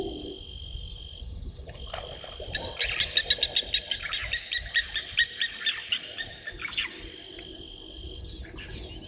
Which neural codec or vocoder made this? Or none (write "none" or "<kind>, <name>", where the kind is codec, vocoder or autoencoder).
none